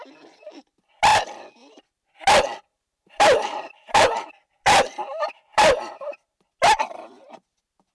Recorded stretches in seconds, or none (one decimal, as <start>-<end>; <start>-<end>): 0.0-2.7; 4.3-5.5; 6.1-7.9